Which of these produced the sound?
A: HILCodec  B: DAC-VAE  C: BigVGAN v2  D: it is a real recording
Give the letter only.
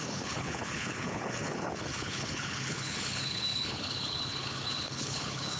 A